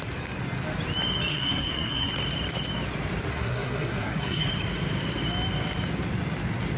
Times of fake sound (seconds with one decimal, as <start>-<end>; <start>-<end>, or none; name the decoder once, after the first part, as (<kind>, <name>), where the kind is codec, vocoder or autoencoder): 1.3-2.1 (codec, SNAC); 3.3-4.5